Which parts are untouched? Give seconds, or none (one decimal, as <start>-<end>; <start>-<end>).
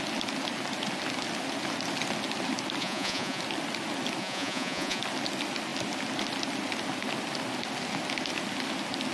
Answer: 0.0-2.8; 3.4-4.2; 5.0-9.1